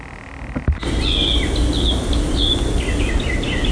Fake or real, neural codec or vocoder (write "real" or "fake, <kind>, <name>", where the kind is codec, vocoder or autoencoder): real